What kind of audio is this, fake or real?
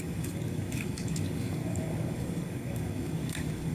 fake